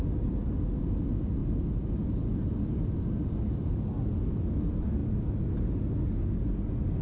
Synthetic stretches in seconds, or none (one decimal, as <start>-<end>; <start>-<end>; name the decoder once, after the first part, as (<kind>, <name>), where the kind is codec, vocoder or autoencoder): none